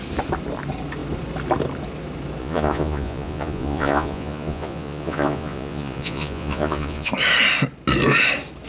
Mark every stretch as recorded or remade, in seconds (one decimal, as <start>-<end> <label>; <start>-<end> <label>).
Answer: 0.0-2.4 recorded; 2.4-7.1 remade; 7.1-8.7 recorded